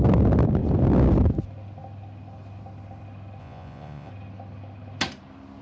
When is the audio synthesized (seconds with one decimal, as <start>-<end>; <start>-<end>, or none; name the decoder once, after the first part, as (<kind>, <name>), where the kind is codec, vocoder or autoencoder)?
3.4-4.1 (vocoder, Vocos)